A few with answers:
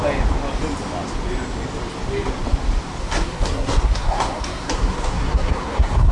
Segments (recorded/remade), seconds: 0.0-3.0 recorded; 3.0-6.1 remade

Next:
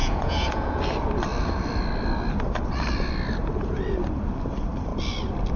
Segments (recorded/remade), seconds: 0.0-0.8 remade; 0.8-5.6 recorded

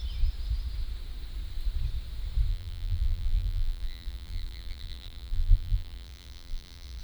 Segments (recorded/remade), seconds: 0.0-2.5 recorded; 2.5-7.0 remade

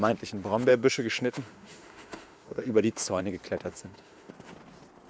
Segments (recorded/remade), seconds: 0.0-0.7 recorded; 0.7-3.2 remade; 3.2-3.7 recorded; 3.7-4.3 remade; 4.3-5.1 recorded

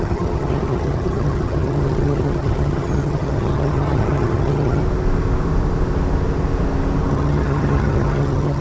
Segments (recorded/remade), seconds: 0.0-4.8 remade; 4.8-7.1 recorded; 7.1-8.6 remade